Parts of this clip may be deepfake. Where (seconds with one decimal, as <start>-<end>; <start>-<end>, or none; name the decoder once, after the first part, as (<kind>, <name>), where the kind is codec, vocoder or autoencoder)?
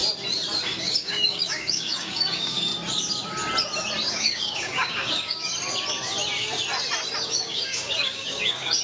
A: 0.8-2.7 (codec, DAC); 4.1-5.5; 7.3-8.8